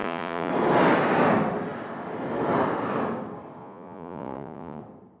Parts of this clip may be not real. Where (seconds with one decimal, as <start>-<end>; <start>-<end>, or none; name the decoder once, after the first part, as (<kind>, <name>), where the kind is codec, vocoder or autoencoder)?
0.0-0.5 (vocoder, Vocos); 3.6-4.8